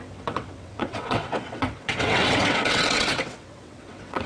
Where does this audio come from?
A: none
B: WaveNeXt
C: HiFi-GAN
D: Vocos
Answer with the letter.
B